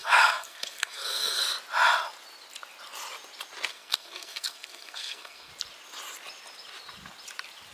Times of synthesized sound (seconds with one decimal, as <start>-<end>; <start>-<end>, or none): 0.0-1.4; 3.7-5.5